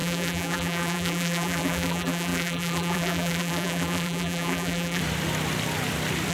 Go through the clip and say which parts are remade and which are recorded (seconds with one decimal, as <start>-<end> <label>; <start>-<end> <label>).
0.0-5.0 remade; 5.0-6.3 recorded